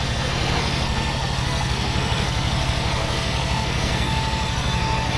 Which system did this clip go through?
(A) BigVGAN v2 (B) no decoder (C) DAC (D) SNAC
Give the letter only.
D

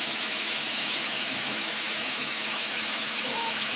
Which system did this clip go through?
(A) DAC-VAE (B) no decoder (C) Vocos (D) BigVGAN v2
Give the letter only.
A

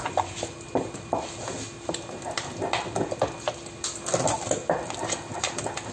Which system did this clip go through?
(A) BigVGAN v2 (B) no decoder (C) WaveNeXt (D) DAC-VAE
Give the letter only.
B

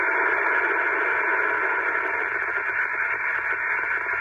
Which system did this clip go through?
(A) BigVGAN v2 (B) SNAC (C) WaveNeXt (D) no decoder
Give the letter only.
D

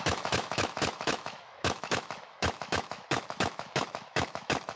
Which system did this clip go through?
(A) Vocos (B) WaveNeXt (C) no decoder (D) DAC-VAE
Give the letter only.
D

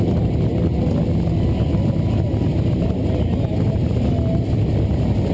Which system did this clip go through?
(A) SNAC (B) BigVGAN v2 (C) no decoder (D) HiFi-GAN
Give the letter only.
C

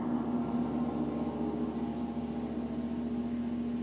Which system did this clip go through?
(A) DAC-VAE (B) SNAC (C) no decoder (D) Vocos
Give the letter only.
C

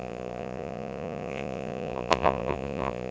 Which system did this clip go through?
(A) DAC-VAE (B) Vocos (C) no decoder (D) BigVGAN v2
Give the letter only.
B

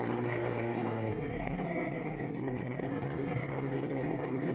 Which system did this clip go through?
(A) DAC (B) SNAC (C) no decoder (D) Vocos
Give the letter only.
B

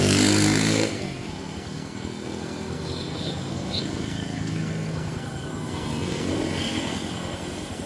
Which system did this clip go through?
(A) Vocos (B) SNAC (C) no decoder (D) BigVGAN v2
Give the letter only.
B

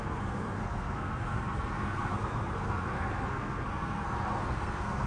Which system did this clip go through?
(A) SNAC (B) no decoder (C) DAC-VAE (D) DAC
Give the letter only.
A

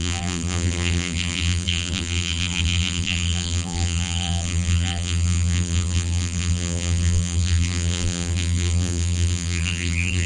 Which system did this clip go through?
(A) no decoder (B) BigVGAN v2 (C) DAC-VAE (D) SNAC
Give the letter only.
B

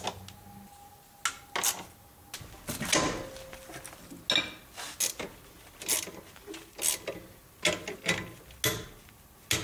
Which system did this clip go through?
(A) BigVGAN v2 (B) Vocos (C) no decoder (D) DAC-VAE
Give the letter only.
C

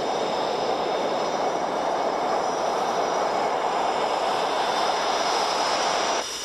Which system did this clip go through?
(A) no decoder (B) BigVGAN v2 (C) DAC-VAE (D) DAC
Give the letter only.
B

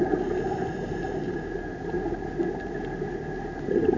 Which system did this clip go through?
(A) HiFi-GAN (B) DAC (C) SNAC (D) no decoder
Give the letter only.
D